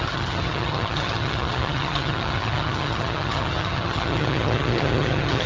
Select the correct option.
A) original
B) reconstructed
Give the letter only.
B